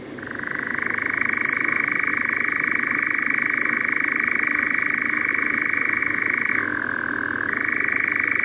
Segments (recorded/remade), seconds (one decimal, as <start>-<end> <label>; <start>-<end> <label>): 0.0-8.4 recorded